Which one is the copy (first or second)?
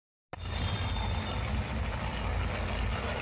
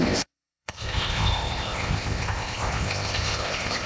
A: second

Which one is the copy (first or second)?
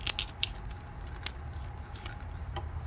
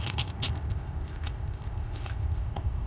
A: second